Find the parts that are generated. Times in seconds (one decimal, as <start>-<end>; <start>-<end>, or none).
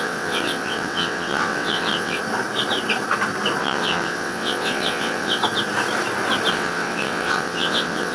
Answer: 0.0-2.2; 3.6-5.4; 6.5-8.1